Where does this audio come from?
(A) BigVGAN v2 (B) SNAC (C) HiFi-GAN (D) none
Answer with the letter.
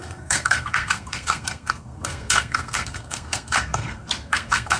B